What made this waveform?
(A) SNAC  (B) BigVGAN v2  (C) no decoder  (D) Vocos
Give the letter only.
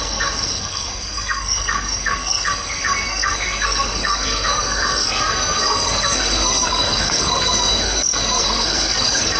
A